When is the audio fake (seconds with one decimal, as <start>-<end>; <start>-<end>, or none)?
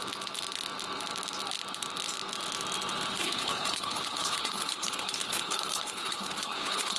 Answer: 3.1-7.0